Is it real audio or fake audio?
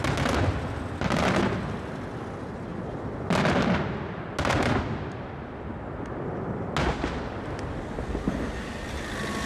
real